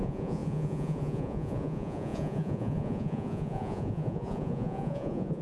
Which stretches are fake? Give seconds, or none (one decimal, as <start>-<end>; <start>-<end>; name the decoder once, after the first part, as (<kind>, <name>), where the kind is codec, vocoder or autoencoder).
0.0-5.4 (vocoder, Vocos)

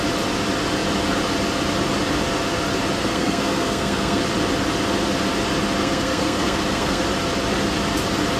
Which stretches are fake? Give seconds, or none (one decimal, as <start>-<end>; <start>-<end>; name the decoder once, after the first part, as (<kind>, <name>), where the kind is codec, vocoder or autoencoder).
3.0-4.2 (codec, SNAC); 5.8-7.0